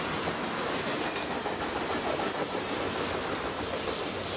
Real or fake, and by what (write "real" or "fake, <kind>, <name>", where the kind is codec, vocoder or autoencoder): real